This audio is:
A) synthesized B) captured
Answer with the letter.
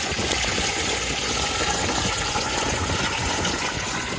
A